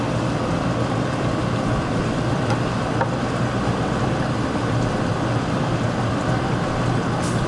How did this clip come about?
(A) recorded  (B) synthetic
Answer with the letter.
B